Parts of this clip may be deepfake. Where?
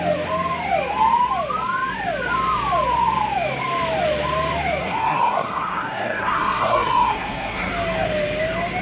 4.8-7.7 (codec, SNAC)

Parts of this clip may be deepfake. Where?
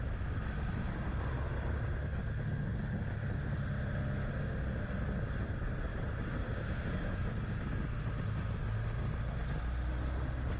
5.9-7.8 (vocoder, BigVGAN v2)